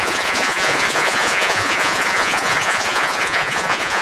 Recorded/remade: remade